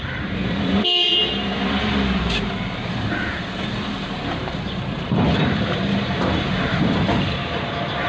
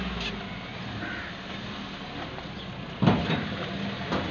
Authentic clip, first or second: second